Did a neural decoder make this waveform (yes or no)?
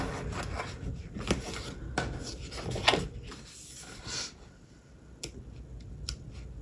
no